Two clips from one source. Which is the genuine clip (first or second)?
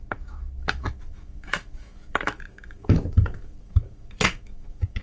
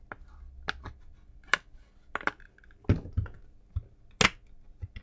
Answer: second